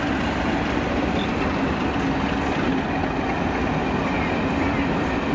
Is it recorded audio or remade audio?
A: recorded